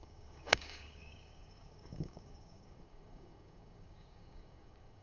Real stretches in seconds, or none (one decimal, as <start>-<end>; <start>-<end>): none